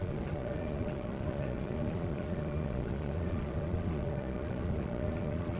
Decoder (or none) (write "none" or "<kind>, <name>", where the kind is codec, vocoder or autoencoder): vocoder, Vocos